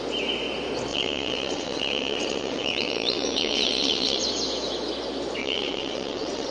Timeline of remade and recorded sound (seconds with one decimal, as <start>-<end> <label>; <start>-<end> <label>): 0.0-0.9 recorded; 0.9-4.2 remade; 4.2-5.4 recorded; 5.4-6.5 remade